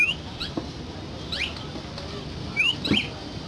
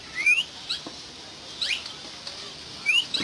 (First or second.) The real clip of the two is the second